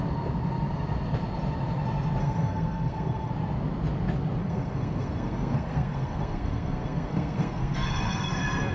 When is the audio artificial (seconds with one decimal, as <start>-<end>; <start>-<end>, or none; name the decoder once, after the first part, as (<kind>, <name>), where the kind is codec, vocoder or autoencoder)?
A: 2.2-3.3 (codec, SNAC); 4.4-8.7